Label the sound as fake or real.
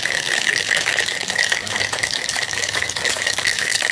fake